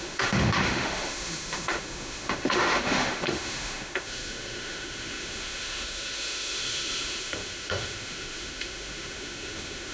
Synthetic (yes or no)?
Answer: yes